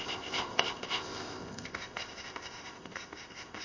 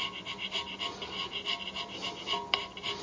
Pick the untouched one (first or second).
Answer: second